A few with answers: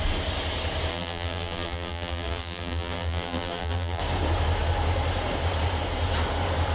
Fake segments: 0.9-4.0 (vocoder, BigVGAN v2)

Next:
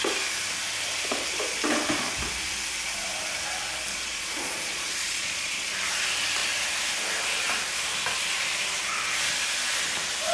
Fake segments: 3.9-5.7 (vocoder, Vocos)

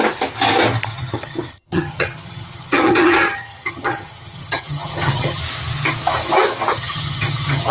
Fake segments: 0.9-5.4 (vocoder, HiFi-GAN); 6.7-7.7

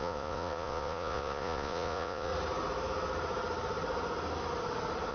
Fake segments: 0.0-2.3 (vocoder, Vocos)

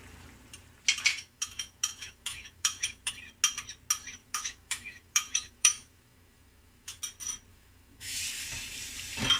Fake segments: 1.1-3.1 (autoencoder, DAC-VAE); 4.2-7.0; 7.5-8.2

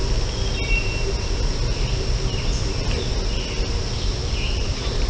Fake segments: 4.2-5.1 (vocoder, BigVGAN v2)

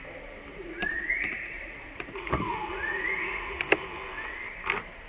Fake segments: 0.5-3.6 (vocoder, Vocos)